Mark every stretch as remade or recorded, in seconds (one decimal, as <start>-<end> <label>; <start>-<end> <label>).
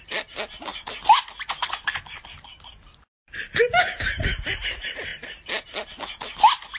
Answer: 0.0-6.8 recorded